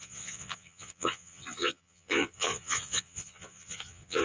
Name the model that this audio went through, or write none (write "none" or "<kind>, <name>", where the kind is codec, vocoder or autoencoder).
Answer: vocoder, Vocos